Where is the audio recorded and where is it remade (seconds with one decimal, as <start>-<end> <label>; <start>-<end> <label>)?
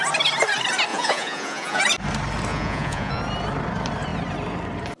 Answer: 0.0-0.9 recorded; 0.9-1.8 remade; 1.8-2.5 recorded; 2.5-3.2 remade; 3.2-5.0 recorded